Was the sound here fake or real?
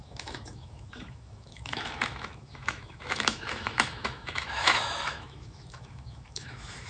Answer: fake